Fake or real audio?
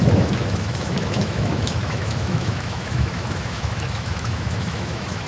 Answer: fake